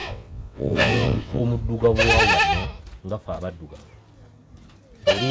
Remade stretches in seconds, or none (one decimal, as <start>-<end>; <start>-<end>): 0.0-1.4